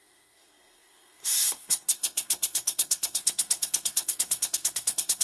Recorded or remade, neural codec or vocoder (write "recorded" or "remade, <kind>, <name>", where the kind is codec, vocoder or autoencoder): remade, codec, SNAC